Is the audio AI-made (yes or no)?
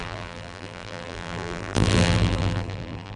yes